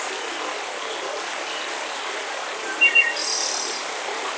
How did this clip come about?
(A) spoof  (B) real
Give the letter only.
B